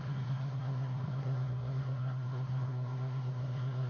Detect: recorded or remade remade